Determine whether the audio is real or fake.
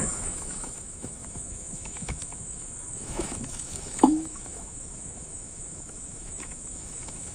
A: fake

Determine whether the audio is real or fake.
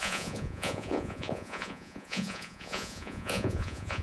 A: fake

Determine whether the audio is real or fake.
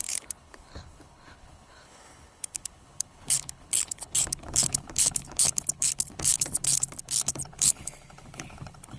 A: fake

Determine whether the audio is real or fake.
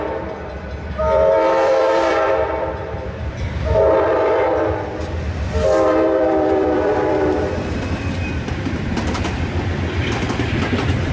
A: fake